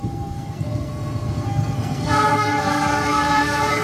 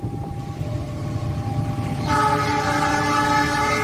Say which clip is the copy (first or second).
first